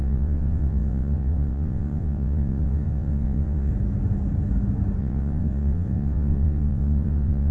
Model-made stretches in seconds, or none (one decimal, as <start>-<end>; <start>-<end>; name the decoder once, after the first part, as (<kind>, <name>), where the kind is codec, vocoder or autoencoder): 0.0-3.7 (vocoder, WaveNeXt); 5.0-7.5